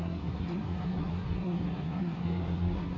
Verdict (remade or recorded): remade